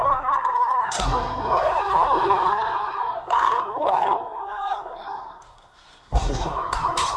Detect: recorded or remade remade